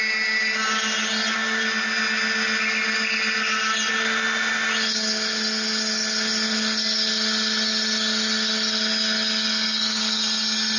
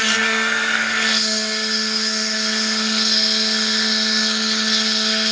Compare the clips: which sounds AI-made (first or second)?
second